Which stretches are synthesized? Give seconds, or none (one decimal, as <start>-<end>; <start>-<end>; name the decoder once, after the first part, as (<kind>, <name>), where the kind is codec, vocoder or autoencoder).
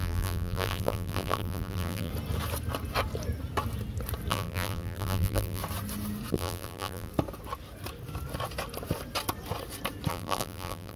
0.0-2.1 (vocoder, BigVGAN v2); 4.3-5.6; 6.3-7.1; 10.1-11.0